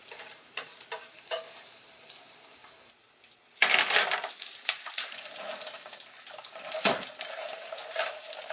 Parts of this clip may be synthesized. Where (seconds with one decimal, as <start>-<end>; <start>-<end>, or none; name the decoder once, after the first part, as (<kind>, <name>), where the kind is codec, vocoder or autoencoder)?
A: 0.0-2.6 (vocoder, BigVGAN v2); 4.3-8.5